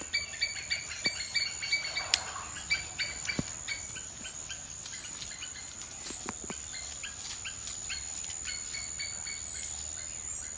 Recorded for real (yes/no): yes